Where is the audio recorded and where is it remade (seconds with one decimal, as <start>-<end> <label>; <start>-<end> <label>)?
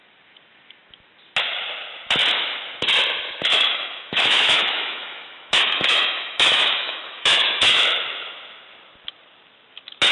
0.0-3.5 recorded; 3.5-7.8 remade; 7.8-10.1 recorded